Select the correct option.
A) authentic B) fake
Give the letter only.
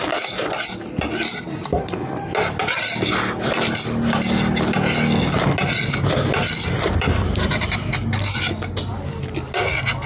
A